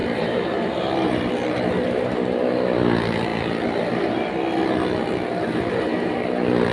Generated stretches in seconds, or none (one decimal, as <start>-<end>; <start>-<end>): 0.0-1.3